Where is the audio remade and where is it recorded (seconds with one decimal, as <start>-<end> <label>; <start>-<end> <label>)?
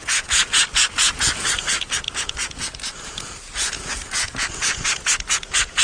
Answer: 0.0-5.8 remade